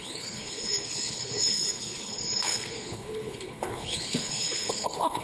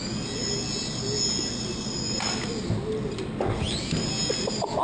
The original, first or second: second